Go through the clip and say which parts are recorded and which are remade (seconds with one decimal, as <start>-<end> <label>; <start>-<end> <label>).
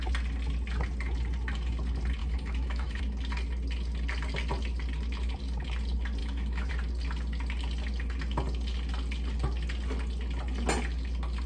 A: 0.0-2.2 recorded; 2.2-3.0 remade; 3.0-6.2 recorded; 6.2-6.7 remade; 6.7-11.5 recorded